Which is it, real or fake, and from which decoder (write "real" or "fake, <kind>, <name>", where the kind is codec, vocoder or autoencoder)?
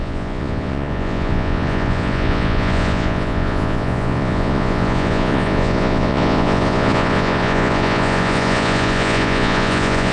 fake, vocoder, Vocos